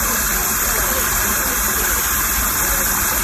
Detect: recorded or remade remade